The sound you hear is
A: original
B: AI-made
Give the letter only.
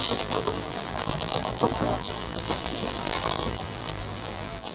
B